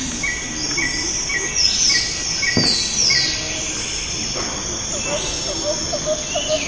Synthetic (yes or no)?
no